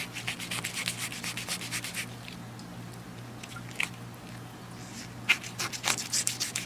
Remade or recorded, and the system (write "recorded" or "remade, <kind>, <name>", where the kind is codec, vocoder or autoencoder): recorded